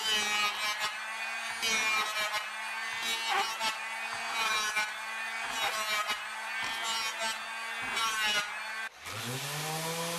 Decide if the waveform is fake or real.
real